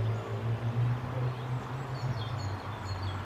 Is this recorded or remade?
recorded